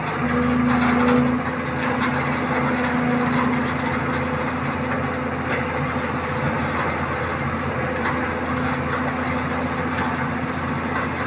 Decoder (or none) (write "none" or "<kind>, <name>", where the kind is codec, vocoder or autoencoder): none